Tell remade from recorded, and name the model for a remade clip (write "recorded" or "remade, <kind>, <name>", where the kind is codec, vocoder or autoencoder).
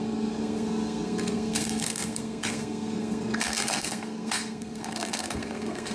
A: remade, codec, SNAC